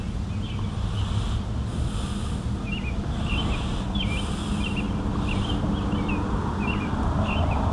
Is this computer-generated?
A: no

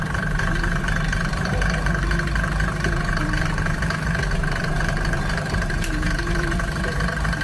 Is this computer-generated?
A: yes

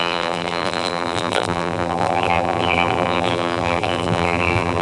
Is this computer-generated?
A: yes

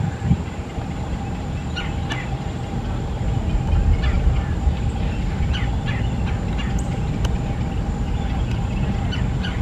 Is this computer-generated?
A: no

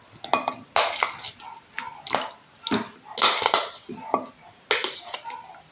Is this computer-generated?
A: no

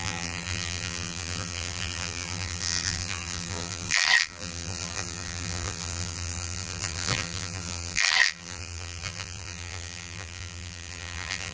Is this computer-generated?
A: yes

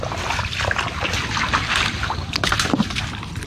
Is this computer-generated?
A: no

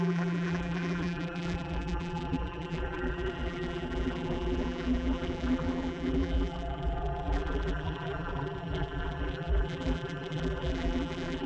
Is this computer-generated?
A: yes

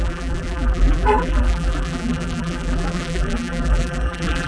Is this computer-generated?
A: yes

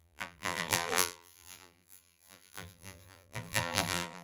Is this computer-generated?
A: yes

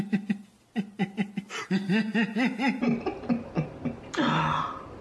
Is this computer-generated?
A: no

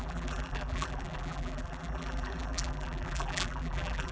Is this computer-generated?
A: yes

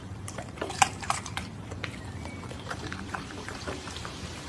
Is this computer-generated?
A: yes